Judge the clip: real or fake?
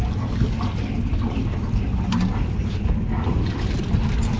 real